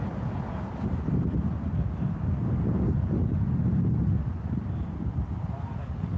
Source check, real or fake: real